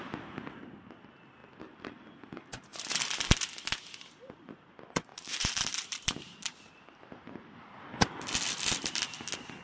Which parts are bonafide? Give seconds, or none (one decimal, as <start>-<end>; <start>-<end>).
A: 0.0-5.1; 7.1-9.6